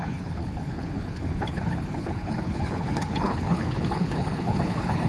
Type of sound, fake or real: fake